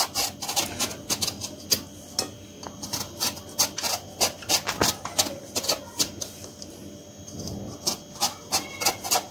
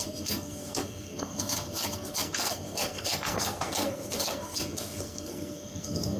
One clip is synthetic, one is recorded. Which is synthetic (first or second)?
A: second